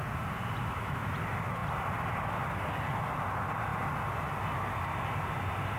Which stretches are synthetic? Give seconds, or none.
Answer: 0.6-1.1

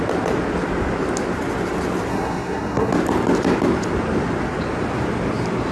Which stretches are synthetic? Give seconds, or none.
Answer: 2.1-2.9

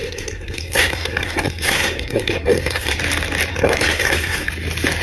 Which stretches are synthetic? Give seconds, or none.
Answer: 0.0-3.0; 3.5-4.5